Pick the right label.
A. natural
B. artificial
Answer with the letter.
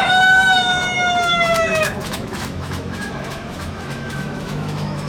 B